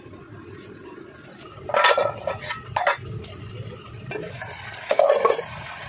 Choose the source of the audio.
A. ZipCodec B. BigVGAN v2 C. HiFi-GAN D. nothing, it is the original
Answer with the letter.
D